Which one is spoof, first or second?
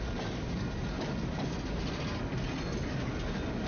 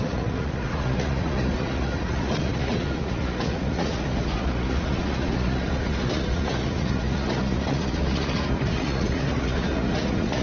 second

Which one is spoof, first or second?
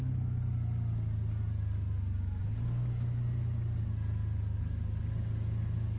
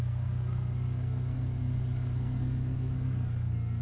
second